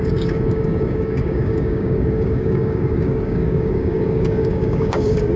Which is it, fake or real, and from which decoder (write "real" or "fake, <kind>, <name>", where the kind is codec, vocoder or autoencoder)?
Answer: fake, codec, DAC